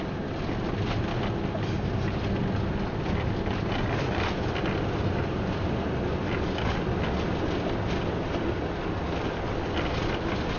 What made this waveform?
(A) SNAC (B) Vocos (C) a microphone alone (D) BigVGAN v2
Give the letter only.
C